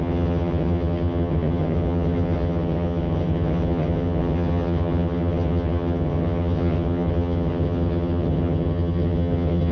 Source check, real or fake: fake